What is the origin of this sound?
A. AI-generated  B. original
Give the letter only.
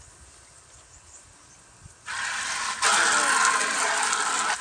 B